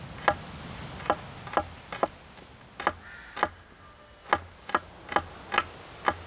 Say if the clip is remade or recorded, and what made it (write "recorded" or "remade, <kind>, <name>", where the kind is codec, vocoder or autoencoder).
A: recorded